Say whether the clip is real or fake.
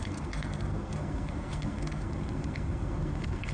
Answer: fake